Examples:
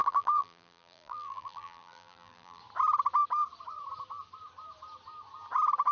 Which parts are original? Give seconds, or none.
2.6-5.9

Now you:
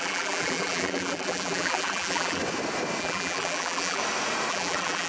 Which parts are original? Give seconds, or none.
2.4-3.0; 4.0-4.5

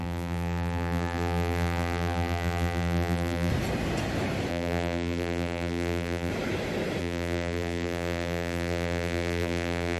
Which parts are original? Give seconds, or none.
3.5-4.5; 6.3-7.0